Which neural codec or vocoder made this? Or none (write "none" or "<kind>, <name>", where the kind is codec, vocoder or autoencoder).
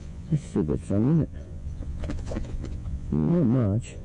vocoder, Vocos